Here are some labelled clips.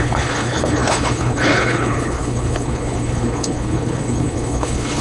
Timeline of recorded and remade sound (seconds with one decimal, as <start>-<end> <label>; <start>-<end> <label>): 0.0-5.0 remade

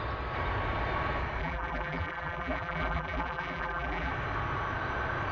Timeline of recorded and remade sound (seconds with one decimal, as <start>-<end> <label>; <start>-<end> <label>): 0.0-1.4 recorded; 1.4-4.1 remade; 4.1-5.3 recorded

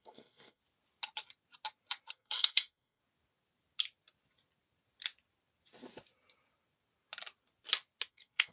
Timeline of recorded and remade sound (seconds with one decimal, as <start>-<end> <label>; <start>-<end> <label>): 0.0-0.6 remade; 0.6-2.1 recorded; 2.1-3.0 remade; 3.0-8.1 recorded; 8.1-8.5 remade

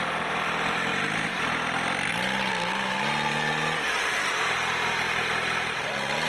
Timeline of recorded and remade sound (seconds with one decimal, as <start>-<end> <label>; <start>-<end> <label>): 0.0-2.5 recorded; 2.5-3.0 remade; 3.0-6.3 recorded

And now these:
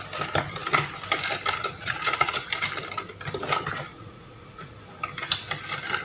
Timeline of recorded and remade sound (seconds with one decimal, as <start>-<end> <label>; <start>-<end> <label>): 0.0-1.6 recorded; 1.6-2.5 remade; 2.5-3.9 recorded; 3.9-4.8 remade; 4.8-6.0 recorded

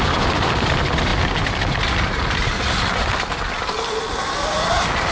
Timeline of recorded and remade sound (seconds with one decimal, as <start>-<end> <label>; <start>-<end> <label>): 0.0-5.1 recorded